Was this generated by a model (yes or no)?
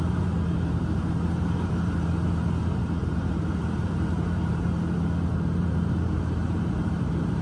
yes